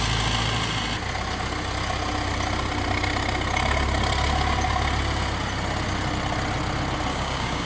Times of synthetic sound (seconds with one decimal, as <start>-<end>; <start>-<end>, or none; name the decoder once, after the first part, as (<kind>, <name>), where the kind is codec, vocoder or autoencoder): 7.1-7.7 (codec, DAC)